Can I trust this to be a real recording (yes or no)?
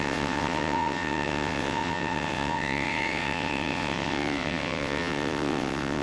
no